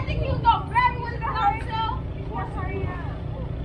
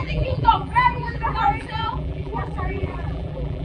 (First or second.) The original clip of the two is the first